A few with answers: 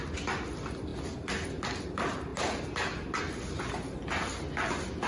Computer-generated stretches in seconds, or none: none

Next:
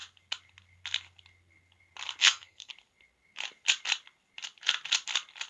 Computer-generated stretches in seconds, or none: 2.2-2.7 (codec, SNAC)

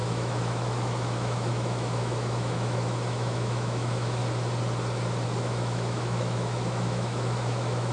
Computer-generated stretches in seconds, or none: 0.0-4.2 (autoencoder, DAC-VAE); 5.4-7.9

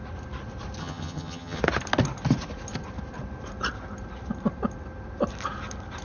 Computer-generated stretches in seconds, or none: 0.8-1.6 (vocoder, HiFi-GAN)

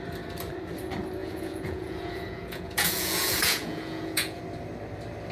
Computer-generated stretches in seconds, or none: 1.2-4.4 (vocoder, Vocos)

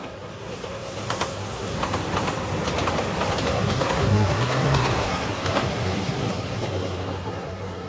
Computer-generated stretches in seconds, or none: 0.0-1.8 (codec, SNAC); 3.4-7.9